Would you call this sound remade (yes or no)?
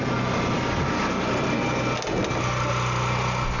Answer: no